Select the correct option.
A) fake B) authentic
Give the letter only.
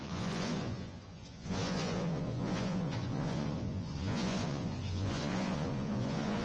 A